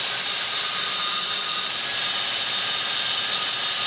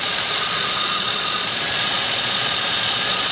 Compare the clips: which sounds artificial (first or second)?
second